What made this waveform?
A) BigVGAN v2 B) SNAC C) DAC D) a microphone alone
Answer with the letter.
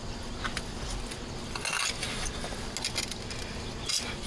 D